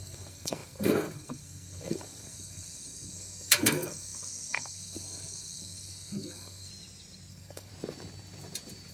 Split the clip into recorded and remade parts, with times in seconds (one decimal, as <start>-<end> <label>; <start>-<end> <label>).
0.0-6.7 remade; 6.7-7.3 recorded; 7.3-7.7 remade; 7.7-8.9 recorded